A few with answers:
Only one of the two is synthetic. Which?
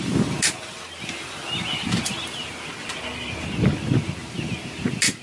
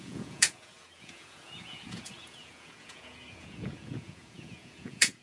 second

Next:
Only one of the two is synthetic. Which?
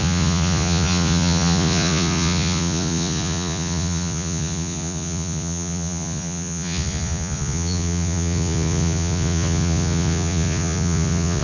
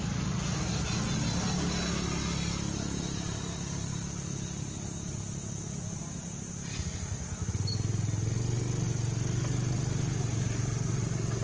first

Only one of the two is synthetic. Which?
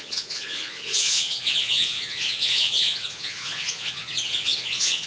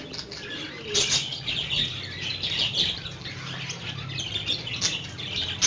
first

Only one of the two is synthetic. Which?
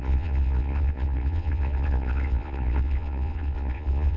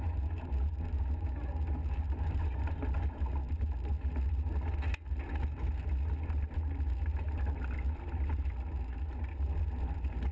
first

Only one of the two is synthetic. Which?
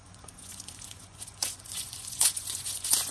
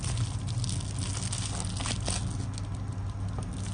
first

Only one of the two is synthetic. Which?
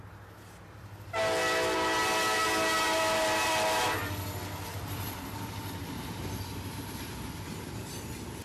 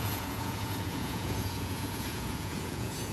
second